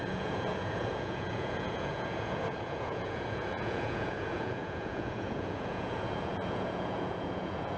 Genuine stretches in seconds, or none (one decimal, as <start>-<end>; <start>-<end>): none